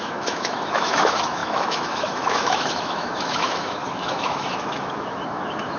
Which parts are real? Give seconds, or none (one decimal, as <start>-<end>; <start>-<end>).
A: none